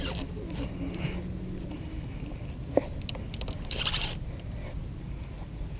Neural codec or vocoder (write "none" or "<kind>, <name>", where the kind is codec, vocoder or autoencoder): none